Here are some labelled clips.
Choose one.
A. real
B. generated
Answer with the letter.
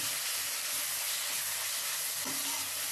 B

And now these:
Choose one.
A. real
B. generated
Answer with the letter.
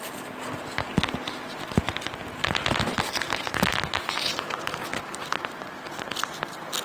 A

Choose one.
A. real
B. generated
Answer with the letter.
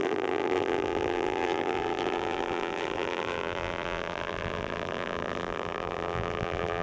B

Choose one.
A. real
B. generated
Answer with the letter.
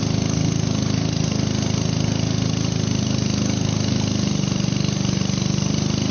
A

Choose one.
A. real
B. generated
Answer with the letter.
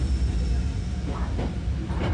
A